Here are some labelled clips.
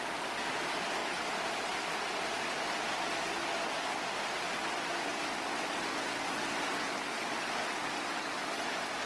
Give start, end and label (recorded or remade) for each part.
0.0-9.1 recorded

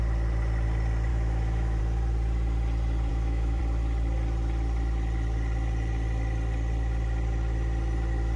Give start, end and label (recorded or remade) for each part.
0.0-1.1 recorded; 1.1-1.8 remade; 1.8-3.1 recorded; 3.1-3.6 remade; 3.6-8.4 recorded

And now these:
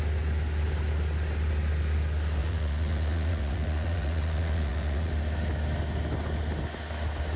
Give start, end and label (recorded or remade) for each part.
0.0-2.4 recorded; 2.4-5.1 remade; 5.1-7.4 recorded

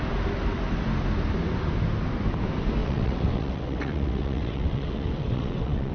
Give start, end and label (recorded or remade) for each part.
0.0-2.8 recorded; 2.8-5.9 remade